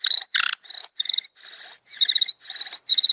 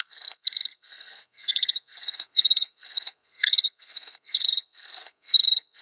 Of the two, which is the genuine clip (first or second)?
first